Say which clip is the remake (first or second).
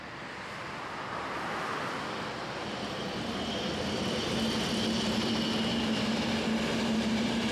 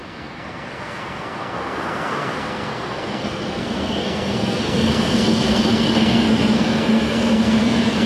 second